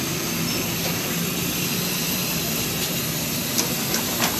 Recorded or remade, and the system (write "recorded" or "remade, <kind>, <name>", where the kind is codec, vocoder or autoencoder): recorded